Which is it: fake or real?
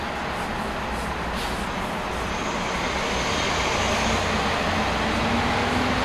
real